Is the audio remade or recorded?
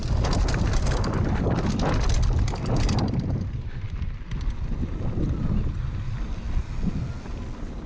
recorded